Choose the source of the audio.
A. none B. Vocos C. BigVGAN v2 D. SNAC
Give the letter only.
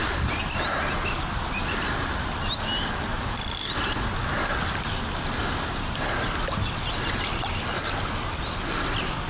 A